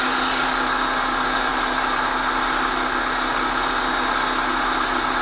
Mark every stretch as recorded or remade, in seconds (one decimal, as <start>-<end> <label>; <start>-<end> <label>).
0.0-5.2 recorded